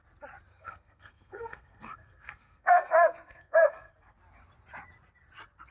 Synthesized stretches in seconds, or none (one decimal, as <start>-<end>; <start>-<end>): 0.5-3.9